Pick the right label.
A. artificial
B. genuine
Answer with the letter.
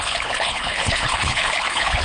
A